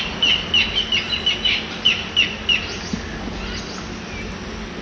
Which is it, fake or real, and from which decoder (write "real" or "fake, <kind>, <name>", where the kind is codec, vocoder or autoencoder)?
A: real